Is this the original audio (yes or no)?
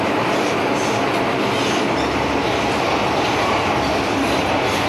yes